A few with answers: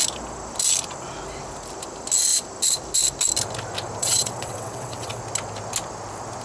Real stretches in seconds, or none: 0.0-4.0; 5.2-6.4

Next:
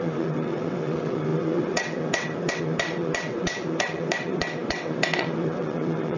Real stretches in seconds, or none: none

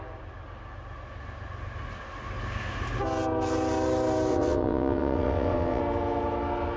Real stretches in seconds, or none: 0.0-4.3; 5.8-6.8

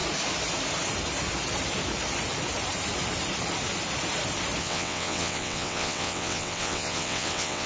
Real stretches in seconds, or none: 0.0-4.6

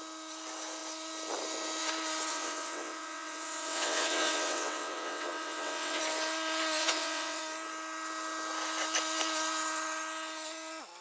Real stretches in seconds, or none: 0.0-2.3; 6.0-6.8; 7.4-11.0